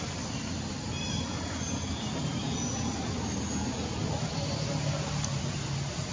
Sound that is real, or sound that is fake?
real